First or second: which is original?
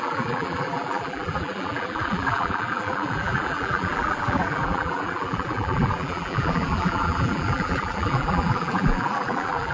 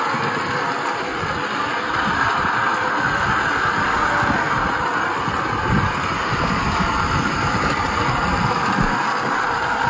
second